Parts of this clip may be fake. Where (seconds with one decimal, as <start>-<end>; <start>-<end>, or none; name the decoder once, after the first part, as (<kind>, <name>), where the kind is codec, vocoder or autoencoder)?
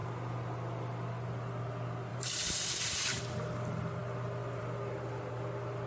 2.1-3.2 (vocoder, BigVGAN v2)